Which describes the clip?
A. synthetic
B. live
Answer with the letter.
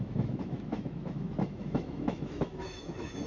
A